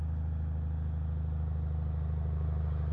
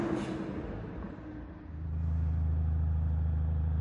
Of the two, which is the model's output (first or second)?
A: second